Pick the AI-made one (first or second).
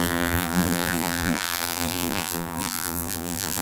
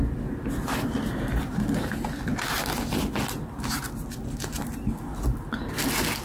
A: first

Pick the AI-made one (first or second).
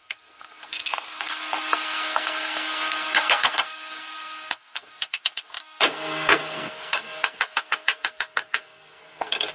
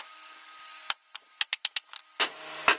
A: first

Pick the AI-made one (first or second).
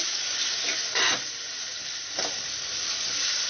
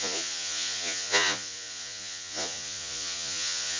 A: second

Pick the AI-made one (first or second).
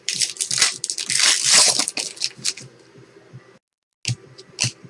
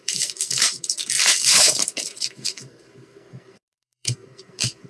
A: second